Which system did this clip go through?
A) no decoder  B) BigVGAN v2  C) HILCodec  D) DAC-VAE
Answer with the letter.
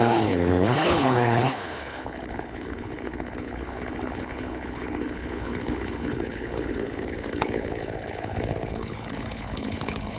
C